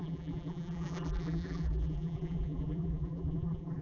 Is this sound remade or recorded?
remade